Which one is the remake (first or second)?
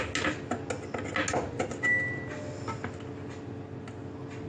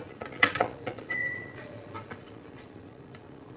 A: second